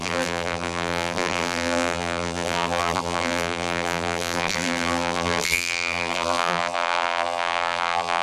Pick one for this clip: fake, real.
fake